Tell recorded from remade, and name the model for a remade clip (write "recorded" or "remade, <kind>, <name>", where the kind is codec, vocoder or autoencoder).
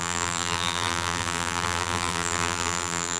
remade, vocoder, BigVGAN v2